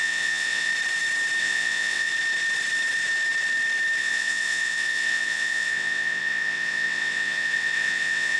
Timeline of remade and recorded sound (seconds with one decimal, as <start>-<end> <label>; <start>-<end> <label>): 0.0-0.7 remade; 0.7-1.4 recorded; 1.4-2.1 remade; 2.1-4.0 recorded; 4.0-8.4 remade